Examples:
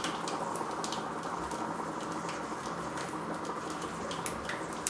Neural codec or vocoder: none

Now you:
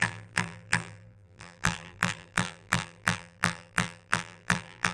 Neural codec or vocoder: vocoder, BigVGAN v2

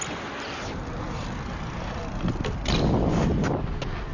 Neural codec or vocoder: none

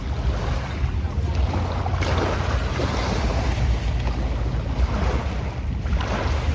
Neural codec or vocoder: none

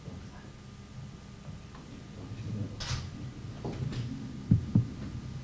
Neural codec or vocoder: none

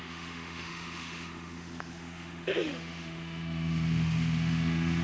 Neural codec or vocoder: autoencoder, DAC-VAE